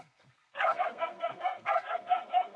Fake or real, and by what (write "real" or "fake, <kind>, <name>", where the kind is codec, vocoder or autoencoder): fake, codec, SNAC